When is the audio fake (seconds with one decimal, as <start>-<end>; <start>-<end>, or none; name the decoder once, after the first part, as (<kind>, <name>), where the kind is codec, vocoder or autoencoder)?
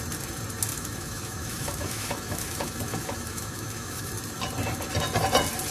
0.7-4.1 (autoencoder, DAC-VAE)